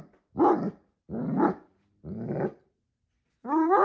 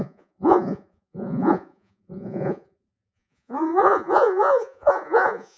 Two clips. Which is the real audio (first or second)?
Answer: first